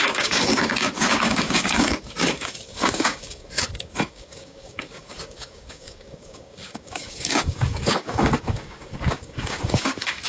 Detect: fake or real fake